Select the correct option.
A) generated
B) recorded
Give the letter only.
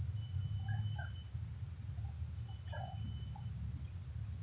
B